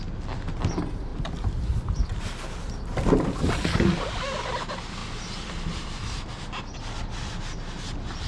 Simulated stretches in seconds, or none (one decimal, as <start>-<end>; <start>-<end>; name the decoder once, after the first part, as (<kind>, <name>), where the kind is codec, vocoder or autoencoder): none